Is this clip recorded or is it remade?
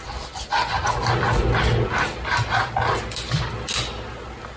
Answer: recorded